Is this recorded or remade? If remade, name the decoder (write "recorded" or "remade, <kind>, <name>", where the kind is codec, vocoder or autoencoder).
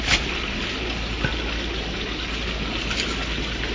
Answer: recorded